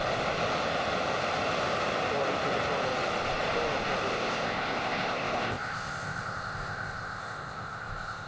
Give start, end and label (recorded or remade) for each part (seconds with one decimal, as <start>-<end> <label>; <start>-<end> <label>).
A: 0.0-4.1 recorded; 4.1-8.3 remade